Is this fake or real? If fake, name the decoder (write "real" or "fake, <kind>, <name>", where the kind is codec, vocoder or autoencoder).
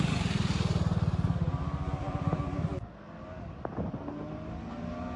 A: real